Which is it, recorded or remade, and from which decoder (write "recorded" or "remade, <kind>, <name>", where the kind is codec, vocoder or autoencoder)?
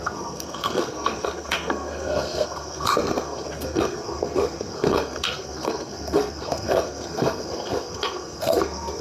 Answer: remade, codec, SNAC